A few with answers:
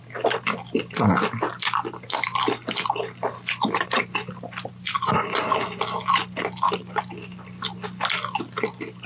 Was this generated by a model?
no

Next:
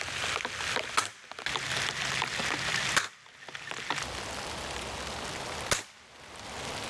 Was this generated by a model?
no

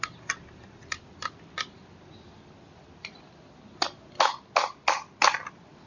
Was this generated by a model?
no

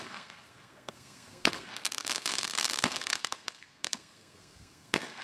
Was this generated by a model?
yes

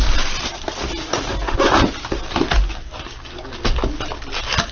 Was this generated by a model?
no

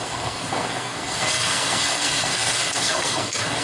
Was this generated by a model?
yes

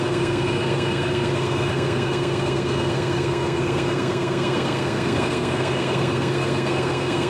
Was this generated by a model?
yes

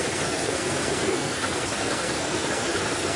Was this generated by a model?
yes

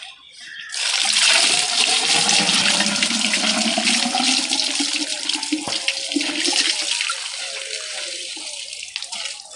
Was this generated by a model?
no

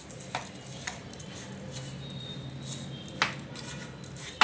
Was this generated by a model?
no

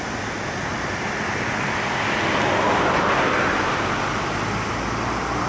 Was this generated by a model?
no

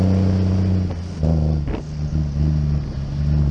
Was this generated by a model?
no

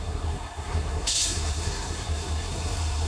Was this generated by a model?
yes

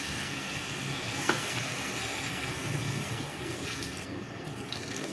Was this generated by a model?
yes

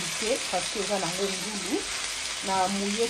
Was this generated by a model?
no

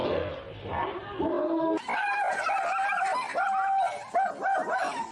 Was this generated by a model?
no